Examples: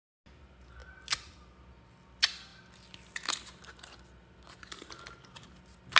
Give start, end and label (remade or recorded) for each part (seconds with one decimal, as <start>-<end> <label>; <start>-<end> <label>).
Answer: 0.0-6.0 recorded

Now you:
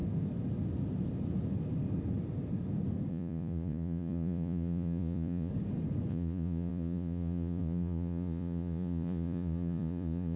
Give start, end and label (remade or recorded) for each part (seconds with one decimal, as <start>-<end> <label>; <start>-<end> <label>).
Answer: 0.0-3.1 recorded; 3.1-5.5 remade; 5.5-6.1 recorded; 6.1-10.4 remade

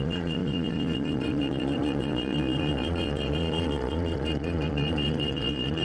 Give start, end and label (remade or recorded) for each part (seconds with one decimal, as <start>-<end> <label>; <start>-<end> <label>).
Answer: 0.0-5.8 remade

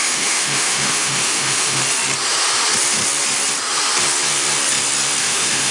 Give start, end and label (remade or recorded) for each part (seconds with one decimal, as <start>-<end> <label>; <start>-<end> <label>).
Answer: 0.0-1.8 remade; 1.8-5.2 recorded; 5.2-5.7 remade